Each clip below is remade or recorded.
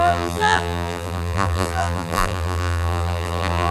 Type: remade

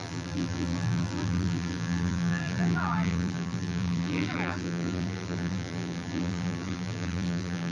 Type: remade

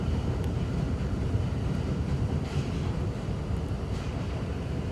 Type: remade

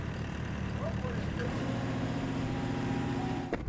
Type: remade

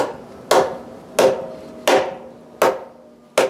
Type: recorded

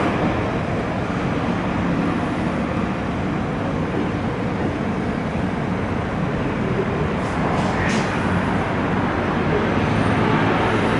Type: recorded